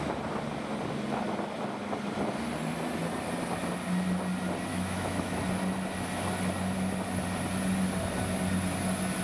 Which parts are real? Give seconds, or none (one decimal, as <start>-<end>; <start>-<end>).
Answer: 0.0-4.7; 5.4-9.2